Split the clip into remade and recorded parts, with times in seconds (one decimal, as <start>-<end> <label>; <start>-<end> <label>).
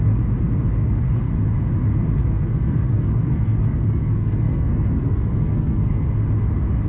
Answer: 0.0-0.8 recorded; 0.8-1.3 remade; 1.3-2.2 recorded; 2.2-6.1 remade; 6.1-6.9 recorded